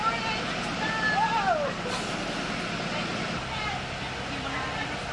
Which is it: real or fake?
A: real